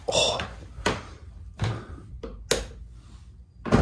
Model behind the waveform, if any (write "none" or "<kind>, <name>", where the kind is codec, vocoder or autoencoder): none